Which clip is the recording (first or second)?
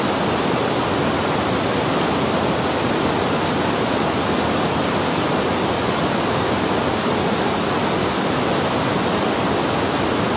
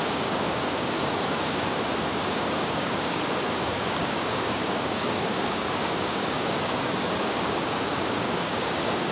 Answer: first